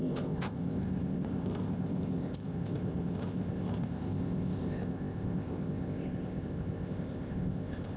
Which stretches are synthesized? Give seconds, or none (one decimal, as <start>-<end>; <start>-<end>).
0.0-8.0